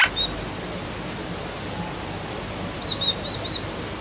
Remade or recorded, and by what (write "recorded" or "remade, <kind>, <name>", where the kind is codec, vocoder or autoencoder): recorded